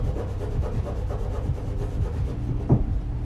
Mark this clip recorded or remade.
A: recorded